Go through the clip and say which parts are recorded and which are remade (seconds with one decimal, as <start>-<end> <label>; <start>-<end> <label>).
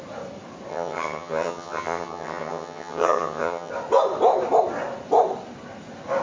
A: 0.0-0.7 recorded; 0.7-3.7 remade; 3.7-6.2 recorded